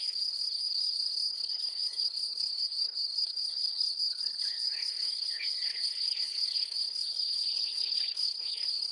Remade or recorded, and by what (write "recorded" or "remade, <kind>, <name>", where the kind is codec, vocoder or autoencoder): remade, codec, HILCodec